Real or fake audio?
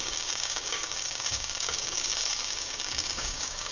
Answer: fake